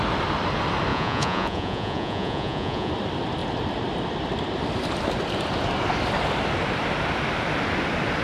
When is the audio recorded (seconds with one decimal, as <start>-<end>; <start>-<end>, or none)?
0.0-0.9; 2.9-8.2